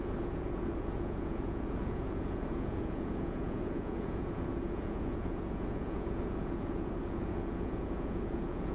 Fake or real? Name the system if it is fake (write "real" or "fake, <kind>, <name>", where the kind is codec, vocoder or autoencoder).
fake, vocoder, Vocos